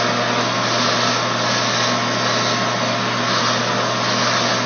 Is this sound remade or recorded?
recorded